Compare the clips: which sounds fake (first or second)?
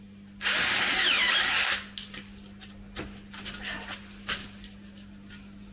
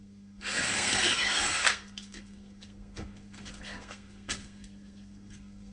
second